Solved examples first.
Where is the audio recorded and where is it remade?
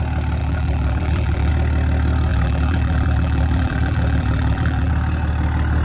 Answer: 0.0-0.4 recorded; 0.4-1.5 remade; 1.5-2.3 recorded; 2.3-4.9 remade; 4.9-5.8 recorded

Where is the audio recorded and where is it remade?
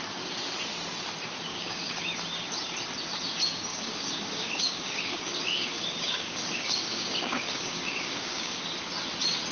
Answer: 0.0-1.5 recorded; 1.5-2.0 remade; 2.0-3.7 recorded; 3.7-8.6 remade; 8.6-9.5 recorded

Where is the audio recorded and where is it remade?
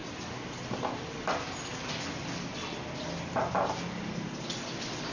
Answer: 0.0-5.1 recorded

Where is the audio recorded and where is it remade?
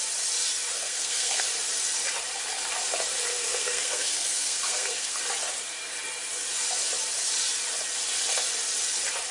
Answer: 0.0-0.7 recorded; 0.7-1.4 remade; 1.4-3.3 recorded; 3.3-5.2 remade; 5.2-9.3 recorded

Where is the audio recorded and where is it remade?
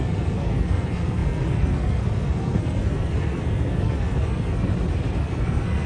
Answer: 0.0-4.7 remade; 4.7-5.2 recorded; 5.2-5.9 remade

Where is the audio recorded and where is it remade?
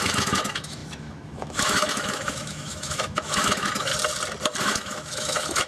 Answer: 0.0-3.9 remade; 3.9-4.6 recorded; 4.6-5.7 remade